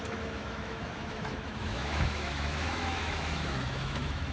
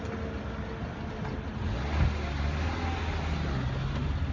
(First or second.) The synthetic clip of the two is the first